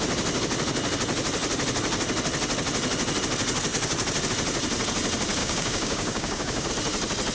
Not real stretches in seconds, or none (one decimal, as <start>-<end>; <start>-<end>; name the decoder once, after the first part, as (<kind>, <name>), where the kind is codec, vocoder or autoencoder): 5.4-6.7 (codec, DAC)